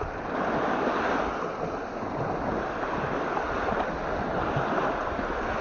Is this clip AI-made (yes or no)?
no